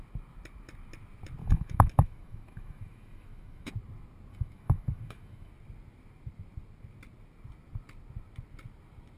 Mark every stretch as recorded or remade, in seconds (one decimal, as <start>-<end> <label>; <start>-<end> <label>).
0.0-1.4 recorded; 1.4-3.7 remade; 3.7-4.3 recorded; 4.3-5.5 remade; 5.5-9.2 recorded